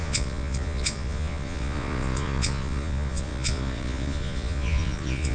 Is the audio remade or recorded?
remade